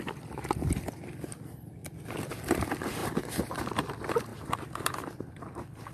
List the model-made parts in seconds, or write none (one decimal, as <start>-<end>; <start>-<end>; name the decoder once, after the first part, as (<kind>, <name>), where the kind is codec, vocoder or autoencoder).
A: 3.0-3.6 (vocoder, BigVGAN v2); 4.3-5.4